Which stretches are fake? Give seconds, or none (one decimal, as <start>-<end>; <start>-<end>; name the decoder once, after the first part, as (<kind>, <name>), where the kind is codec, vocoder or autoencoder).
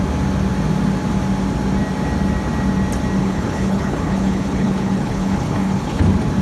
3.2-6.0 (codec, HILCodec)